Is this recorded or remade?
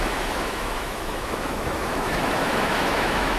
remade